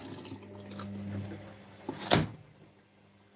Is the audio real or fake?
real